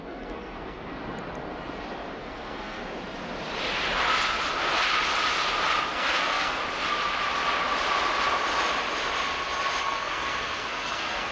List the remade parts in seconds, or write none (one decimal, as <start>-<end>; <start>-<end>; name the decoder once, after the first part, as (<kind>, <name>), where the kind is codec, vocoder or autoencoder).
0.0-0.9 (codec, SNAC); 2.2-2.8; 5.9-6.6; 9.8-11.3